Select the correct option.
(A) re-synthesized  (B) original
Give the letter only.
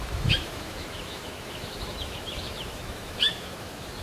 A